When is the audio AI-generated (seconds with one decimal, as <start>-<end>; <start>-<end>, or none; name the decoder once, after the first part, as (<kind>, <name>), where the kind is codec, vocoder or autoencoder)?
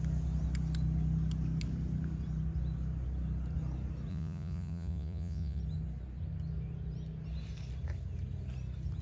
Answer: 4.1-5.6 (vocoder, Vocos)